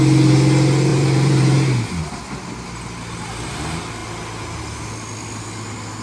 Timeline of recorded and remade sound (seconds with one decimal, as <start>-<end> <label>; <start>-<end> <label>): 0.0-0.9 recorded; 0.9-2.0 remade; 2.0-6.0 recorded